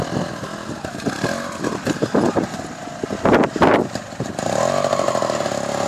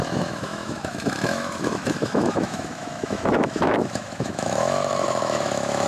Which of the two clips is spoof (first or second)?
second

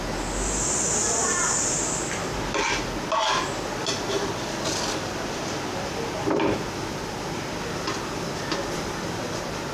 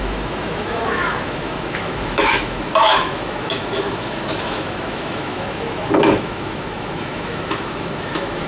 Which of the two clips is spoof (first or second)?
second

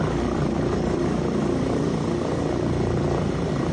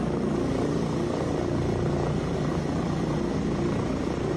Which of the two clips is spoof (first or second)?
first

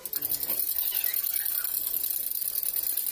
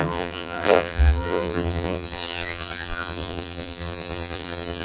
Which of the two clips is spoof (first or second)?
second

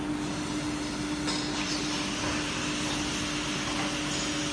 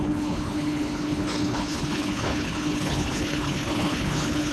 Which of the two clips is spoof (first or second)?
second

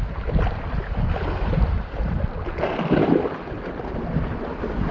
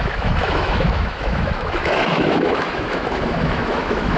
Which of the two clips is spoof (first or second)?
second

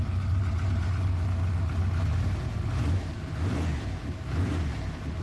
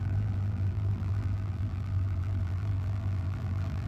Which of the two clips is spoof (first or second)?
second